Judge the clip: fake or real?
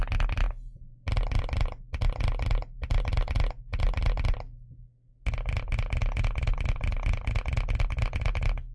real